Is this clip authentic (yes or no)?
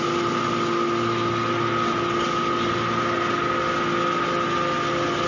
yes